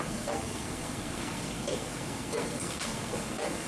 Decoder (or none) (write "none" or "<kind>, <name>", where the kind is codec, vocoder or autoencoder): codec, SNAC